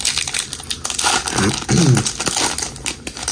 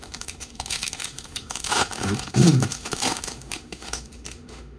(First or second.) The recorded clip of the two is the first